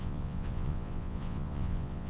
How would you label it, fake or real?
fake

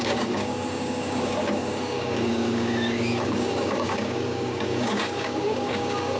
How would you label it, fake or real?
fake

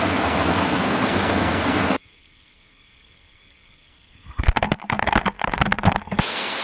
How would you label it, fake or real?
fake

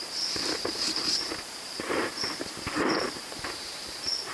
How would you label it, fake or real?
fake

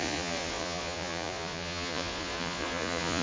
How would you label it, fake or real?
fake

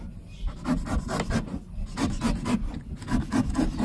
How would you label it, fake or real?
real